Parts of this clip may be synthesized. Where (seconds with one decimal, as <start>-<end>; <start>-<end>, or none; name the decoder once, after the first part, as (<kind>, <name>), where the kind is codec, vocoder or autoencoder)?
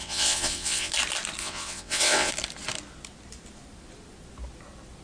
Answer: 0.0-0.9 (vocoder, WaveNeXt); 1.4-2.3